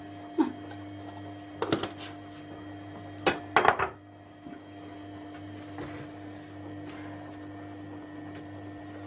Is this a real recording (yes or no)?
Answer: yes